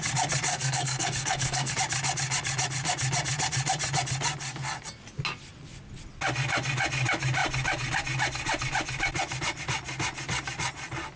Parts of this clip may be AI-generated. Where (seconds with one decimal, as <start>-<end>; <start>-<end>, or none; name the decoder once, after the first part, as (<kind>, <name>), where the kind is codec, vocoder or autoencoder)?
0.5-1.7 (codec, SNAC)